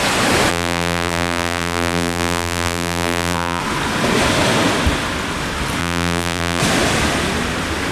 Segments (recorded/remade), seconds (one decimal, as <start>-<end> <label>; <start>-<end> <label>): 0.0-0.5 recorded; 0.5-3.6 remade; 3.6-5.8 recorded; 5.8-6.6 remade; 6.6-7.9 recorded